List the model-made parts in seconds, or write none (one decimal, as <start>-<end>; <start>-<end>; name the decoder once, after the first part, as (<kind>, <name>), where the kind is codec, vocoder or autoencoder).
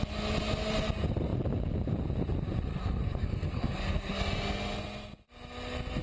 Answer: 2.7-4.2 (codec, SNAC)